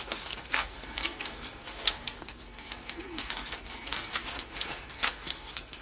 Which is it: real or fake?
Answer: fake